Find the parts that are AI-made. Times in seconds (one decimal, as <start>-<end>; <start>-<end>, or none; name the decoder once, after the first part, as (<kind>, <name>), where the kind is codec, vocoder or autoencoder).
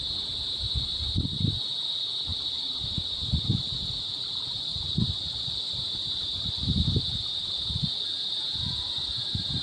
none